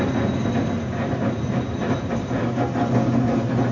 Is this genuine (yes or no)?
yes